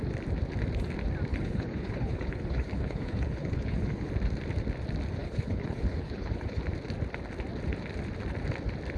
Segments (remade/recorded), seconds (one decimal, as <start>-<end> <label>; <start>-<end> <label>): 0.0-1.3 recorded; 1.3-4.1 remade; 4.1-5.2 recorded; 5.2-6.6 remade; 6.6-9.0 recorded

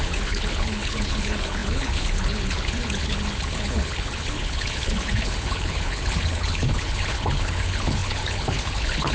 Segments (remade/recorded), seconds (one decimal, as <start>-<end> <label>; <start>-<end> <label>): 0.0-9.1 remade

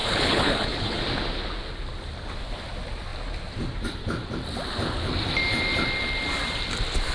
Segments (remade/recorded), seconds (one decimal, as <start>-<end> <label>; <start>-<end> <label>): 0.0-1.0 remade; 1.0-7.1 recorded

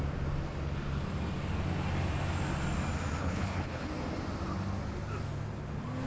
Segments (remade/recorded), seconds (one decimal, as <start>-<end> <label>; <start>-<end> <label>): 0.0-3.2 recorded; 3.2-3.9 remade; 3.9-6.1 recorded

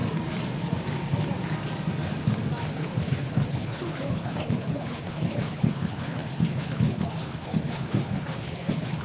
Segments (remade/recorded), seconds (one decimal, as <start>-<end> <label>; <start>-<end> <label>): 0.0-2.7 recorded; 2.7-9.0 remade

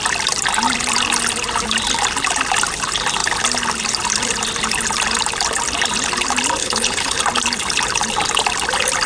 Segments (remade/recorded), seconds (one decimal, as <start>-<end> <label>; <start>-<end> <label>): 0.0-6.6 recorded; 6.6-7.2 remade; 7.2-9.1 recorded